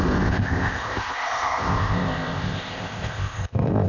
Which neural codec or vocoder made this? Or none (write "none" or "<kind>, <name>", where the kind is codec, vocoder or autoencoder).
codec, ZipCodec